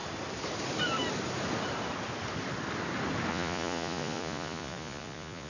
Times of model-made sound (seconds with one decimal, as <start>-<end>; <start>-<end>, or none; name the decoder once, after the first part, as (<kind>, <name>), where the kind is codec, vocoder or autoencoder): 3.3-5.5 (vocoder, Vocos)